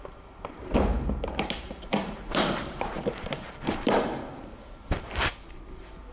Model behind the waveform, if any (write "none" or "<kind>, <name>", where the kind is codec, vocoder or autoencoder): vocoder, BigVGAN v2